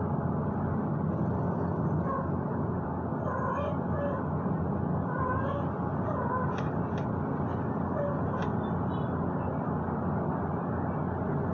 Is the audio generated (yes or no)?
no